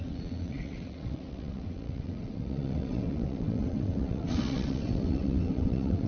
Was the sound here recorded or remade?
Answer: remade